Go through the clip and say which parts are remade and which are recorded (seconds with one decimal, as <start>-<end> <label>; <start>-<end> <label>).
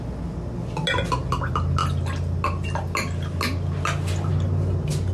0.0-5.1 recorded